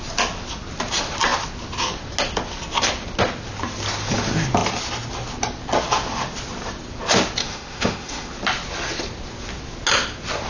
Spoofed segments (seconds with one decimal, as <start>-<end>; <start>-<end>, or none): 7.4-8.3